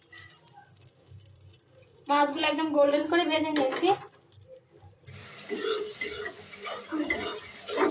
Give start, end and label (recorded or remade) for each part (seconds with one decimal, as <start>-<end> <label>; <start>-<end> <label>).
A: 0.0-7.9 recorded